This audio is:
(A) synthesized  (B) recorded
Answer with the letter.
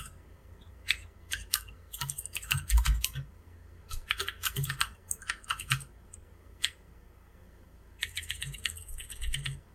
A